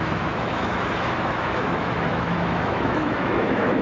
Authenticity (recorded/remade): remade